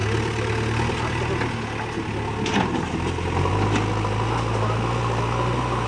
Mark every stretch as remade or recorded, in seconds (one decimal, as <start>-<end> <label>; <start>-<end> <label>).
0.0-5.9 recorded